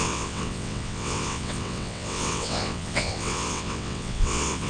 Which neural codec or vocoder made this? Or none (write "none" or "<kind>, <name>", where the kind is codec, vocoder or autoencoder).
vocoder, WaveNeXt